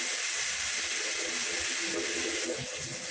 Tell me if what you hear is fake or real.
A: real